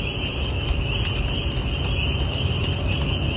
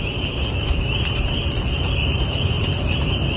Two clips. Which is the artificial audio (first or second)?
second